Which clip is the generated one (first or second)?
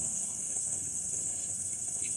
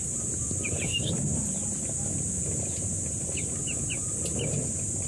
first